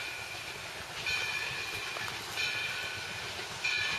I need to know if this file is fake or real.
real